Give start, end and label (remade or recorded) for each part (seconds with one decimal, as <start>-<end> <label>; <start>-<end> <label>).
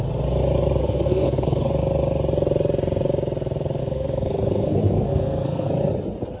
0.0-0.8 recorded; 0.8-1.7 remade; 1.7-3.8 recorded; 3.8-5.7 remade; 5.7-6.4 recorded